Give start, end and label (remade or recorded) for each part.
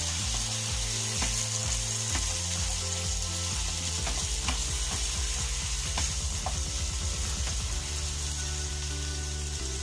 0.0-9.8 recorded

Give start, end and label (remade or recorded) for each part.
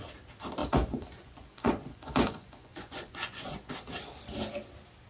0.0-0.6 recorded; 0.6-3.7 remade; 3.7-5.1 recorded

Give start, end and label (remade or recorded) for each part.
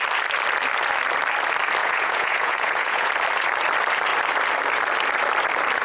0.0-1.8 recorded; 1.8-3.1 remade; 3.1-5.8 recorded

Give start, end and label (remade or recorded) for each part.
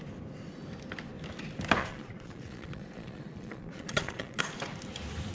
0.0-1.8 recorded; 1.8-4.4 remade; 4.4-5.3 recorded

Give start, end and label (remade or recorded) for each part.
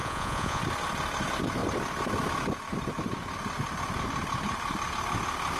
0.0-0.6 remade; 0.6-5.6 recorded